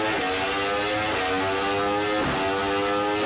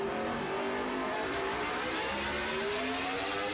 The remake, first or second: second